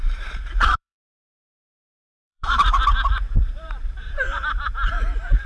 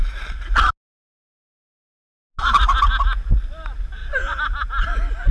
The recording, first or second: second